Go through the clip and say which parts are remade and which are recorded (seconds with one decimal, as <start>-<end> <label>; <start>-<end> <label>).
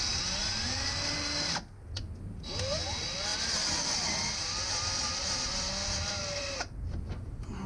0.0-7.7 recorded